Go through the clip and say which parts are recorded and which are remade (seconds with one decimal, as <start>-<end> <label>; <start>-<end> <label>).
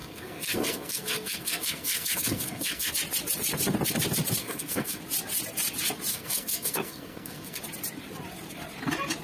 0.0-2.9 remade; 2.9-4.4 recorded; 4.4-5.0 remade; 5.0-6.1 recorded; 6.1-7.6 remade; 7.6-9.2 recorded